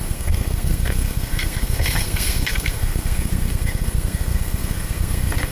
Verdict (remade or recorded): remade